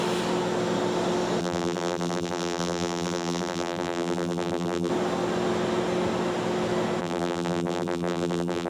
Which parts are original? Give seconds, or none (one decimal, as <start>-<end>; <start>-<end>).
0.0-1.4; 4.9-7.0